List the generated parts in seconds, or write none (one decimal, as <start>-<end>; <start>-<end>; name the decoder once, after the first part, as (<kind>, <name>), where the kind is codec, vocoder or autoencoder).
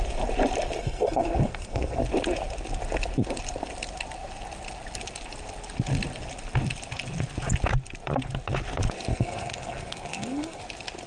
0.8-2.0 (codec, SNAC); 9.1-10.6